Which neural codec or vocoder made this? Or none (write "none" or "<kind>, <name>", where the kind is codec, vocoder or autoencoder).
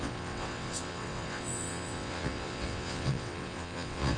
vocoder, WaveNeXt